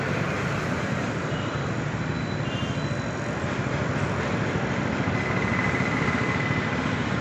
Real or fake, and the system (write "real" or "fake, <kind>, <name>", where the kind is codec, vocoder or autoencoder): real